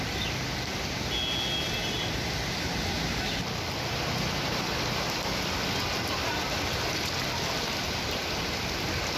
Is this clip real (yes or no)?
yes